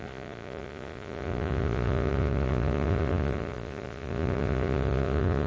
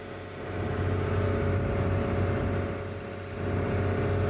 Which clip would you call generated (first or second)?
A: first